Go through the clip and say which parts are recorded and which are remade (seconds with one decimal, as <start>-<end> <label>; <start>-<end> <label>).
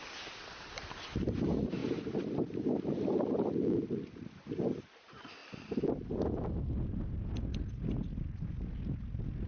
0.0-9.5 recorded